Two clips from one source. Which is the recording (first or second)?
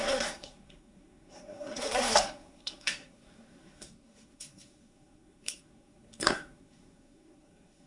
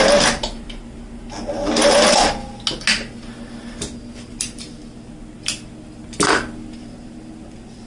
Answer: second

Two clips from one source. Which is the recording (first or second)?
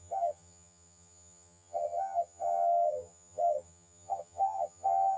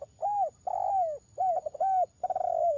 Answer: second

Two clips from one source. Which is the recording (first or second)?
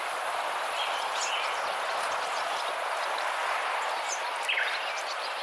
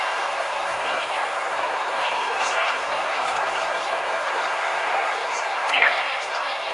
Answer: first